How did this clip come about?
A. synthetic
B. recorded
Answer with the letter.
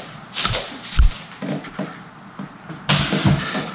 B